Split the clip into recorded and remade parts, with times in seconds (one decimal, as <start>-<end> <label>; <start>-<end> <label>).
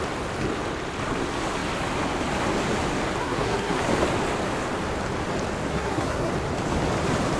0.0-3.2 recorded; 3.2-3.8 remade; 3.8-5.7 recorded; 5.7-6.3 remade; 6.3-7.4 recorded